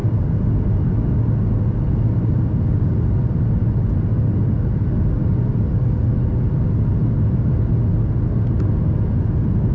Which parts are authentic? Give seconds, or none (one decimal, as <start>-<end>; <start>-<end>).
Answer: 0.0-9.7